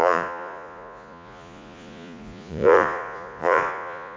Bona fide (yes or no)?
no